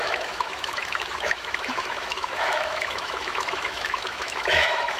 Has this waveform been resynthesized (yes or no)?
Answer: yes